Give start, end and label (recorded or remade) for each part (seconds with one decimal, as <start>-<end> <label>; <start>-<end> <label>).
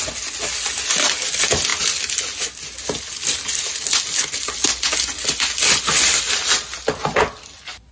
0.0-7.9 recorded